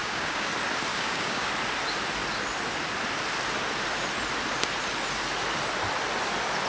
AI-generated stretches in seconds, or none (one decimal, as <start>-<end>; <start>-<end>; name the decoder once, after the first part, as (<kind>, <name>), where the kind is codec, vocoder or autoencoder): 0.0-0.5 (codec, DAC); 0.9-1.5